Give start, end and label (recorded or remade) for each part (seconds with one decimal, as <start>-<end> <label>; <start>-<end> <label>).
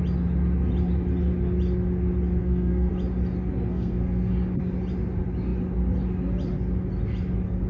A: 0.0-2.4 recorded; 2.4-2.9 remade; 2.9-3.7 recorded; 3.7-4.3 remade; 4.3-7.7 recorded